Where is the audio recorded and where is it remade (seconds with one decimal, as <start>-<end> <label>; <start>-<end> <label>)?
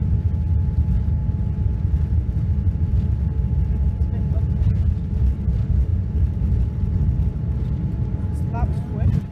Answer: 0.0-9.3 recorded